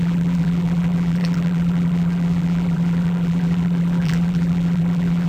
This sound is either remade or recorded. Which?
remade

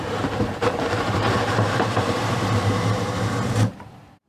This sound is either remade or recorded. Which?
remade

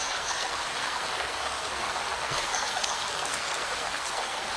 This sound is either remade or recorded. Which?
remade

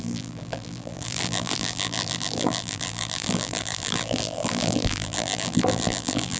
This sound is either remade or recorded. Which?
remade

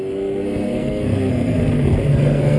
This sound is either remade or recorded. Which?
remade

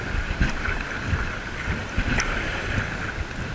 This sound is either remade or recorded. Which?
recorded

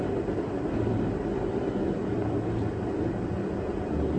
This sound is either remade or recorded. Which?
recorded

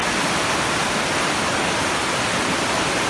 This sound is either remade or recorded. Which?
recorded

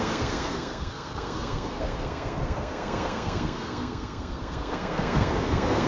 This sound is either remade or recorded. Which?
remade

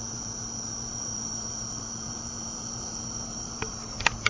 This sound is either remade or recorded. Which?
remade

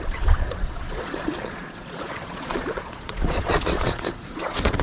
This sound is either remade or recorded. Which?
remade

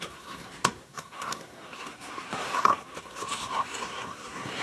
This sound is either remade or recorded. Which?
remade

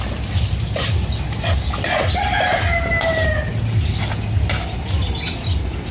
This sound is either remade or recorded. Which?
recorded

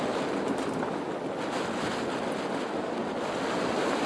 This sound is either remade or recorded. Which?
recorded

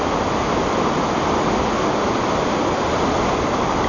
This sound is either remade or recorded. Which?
recorded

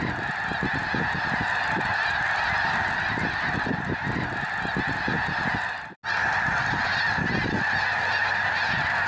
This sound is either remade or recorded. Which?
recorded